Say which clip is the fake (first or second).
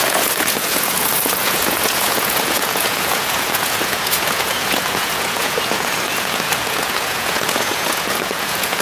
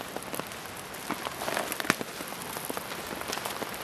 first